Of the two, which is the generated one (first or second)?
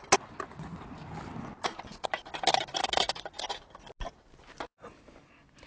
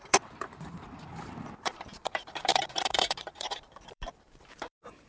second